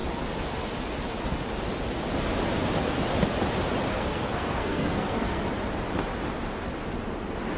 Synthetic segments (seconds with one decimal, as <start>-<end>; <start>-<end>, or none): 3.9-5.4